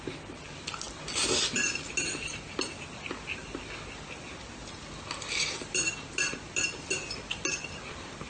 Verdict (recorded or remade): recorded